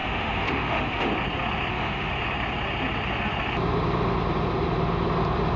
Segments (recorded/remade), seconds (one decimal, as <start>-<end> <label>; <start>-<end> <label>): 0.0-1.1 remade; 1.1-1.7 recorded; 1.7-2.1 remade; 2.1-5.6 recorded